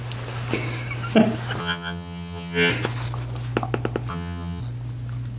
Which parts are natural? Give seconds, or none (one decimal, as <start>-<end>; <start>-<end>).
0.0-1.6; 2.7-4.1; 4.6-5.4

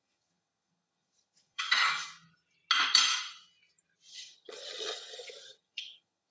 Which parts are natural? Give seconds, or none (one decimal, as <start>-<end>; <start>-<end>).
2.1-4.1

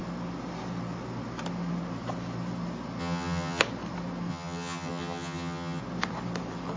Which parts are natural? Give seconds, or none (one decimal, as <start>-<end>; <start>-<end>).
0.0-3.0; 3.6-4.3; 5.8-6.8

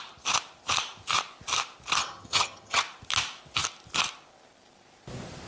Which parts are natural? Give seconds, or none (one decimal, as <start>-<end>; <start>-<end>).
0.0-2.0; 2.8-5.5

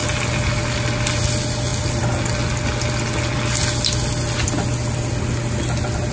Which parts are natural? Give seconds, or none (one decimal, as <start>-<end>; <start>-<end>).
0.0-6.1

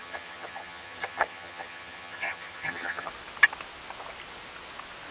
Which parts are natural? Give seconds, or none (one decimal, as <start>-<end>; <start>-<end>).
3.1-5.1

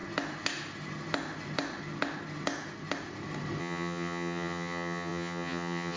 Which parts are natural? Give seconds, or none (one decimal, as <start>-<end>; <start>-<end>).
0.0-3.6